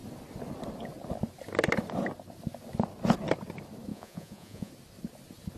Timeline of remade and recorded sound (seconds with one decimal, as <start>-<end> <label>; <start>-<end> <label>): 0.0-3.9 recorded; 3.9-4.7 remade; 4.7-5.6 recorded